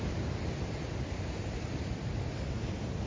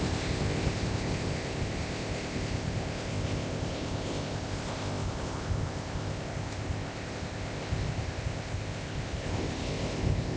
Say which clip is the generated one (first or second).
second